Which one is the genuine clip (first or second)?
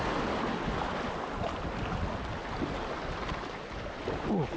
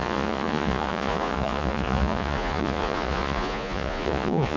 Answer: first